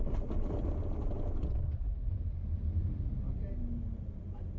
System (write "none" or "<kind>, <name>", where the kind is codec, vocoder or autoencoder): none